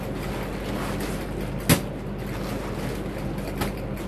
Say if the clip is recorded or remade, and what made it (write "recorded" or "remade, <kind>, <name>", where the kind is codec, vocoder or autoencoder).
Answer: recorded